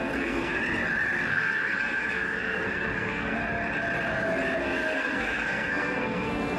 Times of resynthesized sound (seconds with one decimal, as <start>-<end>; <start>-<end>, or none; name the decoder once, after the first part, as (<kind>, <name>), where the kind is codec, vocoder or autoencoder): 0.0-0.6 (codec, SNAC); 1.3-3.4; 4.6-6.6